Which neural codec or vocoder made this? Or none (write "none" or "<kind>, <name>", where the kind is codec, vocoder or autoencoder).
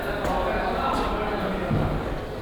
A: none